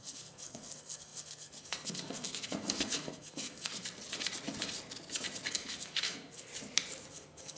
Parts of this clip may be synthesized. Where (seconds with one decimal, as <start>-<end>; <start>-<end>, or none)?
0.0-3.7; 5.5-6.5; 7.1-7.6